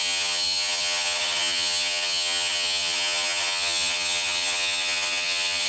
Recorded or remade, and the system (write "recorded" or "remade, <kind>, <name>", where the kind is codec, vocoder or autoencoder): remade, vocoder, HiFi-GAN